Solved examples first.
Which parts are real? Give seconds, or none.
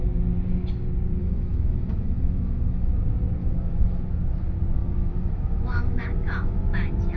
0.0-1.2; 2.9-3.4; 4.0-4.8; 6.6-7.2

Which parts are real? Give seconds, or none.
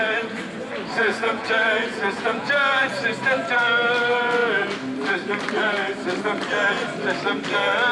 0.0-1.0; 2.5-7.9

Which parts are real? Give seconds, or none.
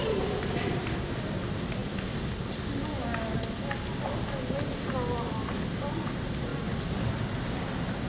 1.8-5.1; 6.5-7.5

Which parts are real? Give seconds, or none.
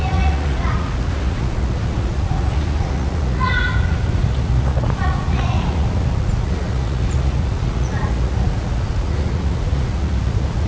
none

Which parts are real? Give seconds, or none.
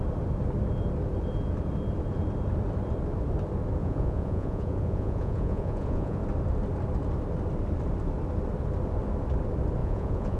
0.0-3.8; 6.2-9.8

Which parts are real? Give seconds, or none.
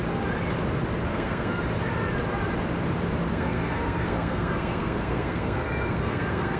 0.0-1.1; 1.6-3.3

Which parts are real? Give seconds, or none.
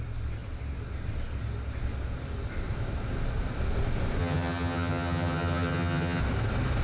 0.0-4.2; 6.2-6.8